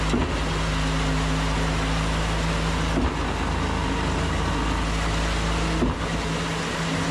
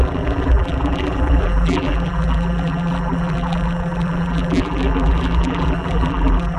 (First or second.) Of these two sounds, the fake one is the second